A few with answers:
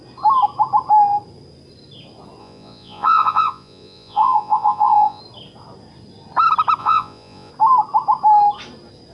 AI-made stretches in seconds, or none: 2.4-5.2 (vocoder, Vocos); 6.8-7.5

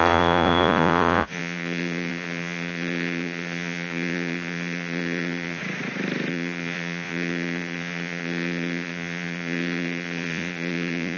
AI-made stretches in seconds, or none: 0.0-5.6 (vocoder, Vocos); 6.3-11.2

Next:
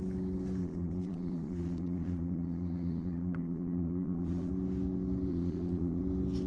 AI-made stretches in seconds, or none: 0.6-4.5 (vocoder, Vocos); 5.3-6.0

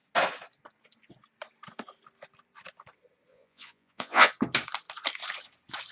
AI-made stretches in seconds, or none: 3.3-4.3 (vocoder, Vocos)